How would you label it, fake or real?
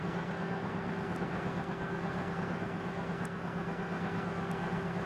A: fake